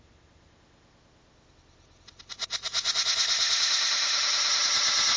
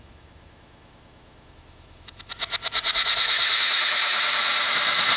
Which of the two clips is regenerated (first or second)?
second